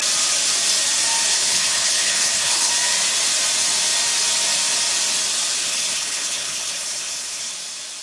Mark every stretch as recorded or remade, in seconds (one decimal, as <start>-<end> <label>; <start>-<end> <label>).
0.0-1.3 recorded; 1.3-2.7 remade; 2.7-5.6 recorded; 5.6-7.5 remade; 7.5-8.0 recorded